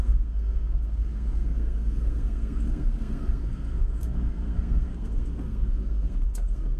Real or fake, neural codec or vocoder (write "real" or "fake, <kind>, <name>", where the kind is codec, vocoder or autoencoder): fake, codec, SNAC